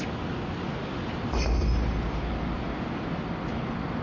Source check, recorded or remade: recorded